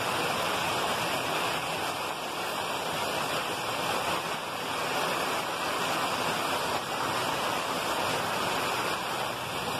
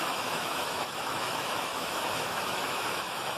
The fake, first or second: second